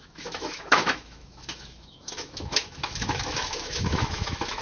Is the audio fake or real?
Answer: fake